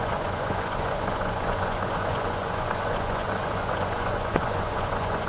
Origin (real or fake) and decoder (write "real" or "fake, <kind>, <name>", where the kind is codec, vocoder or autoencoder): fake, vocoder, Vocos